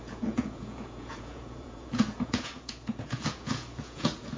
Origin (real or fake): fake